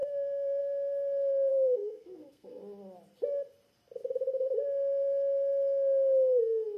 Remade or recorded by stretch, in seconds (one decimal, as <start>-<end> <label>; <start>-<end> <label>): 0.0-0.6 remade; 0.6-1.5 recorded; 1.5-2.6 remade; 2.6-6.8 recorded